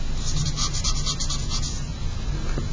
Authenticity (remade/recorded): recorded